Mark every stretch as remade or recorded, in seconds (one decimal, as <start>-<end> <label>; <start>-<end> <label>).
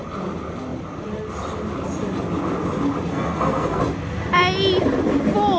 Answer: 0.0-3.1 recorded; 3.1-3.8 remade; 3.8-5.6 recorded